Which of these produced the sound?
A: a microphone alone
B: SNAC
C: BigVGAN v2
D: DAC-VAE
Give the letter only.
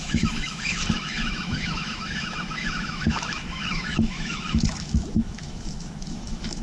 D